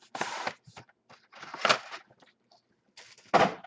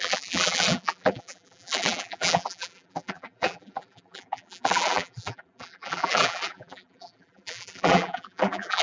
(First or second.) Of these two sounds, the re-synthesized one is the second